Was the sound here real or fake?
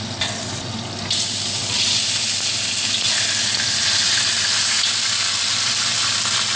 real